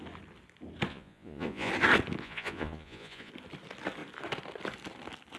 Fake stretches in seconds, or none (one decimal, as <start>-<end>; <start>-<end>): 0.9-1.7; 2.2-3.3